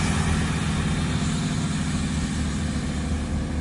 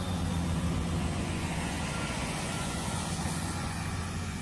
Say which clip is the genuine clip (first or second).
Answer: first